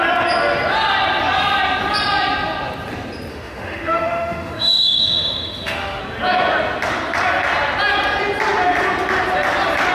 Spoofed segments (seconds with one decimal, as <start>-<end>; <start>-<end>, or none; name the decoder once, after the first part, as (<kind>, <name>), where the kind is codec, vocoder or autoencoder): 3.3-6.0 (autoencoder, DAC-VAE)